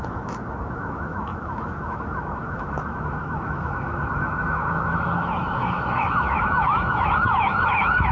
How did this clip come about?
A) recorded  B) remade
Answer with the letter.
B